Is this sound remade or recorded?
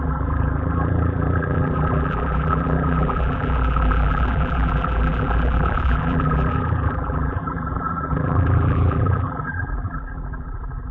remade